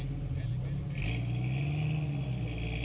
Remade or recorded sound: recorded